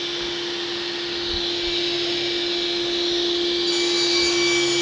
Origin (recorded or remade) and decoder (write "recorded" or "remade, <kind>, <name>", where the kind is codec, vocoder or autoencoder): recorded